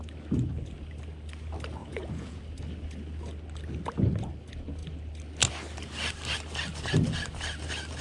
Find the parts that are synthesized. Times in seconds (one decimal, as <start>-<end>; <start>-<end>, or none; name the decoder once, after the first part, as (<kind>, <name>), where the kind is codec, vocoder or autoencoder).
1.8-2.4 (vocoder, Vocos)